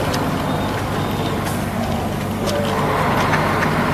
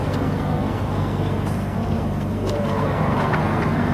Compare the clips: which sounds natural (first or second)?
first